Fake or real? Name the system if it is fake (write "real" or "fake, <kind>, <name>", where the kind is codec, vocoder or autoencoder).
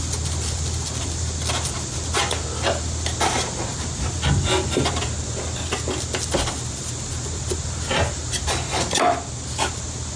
real